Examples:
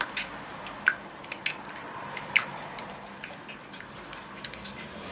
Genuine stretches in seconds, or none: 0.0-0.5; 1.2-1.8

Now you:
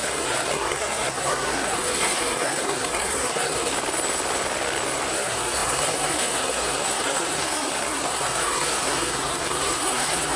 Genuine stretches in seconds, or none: 3.7-5.1

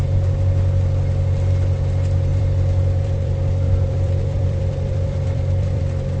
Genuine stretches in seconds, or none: 0.0-2.3; 5.8-6.2

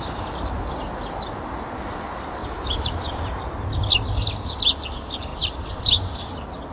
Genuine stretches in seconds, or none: 0.0-2.4; 3.2-5.3; 6.0-6.7